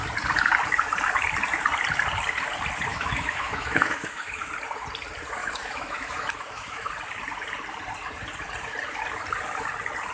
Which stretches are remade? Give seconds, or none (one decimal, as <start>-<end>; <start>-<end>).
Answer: 2.9-4.5; 5.4-6.9